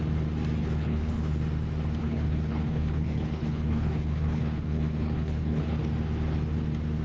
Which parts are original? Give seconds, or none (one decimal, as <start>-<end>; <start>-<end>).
0.0-0.6; 1.4-2.0; 5.8-7.0